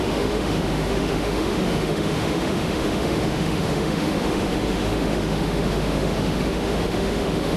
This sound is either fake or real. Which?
fake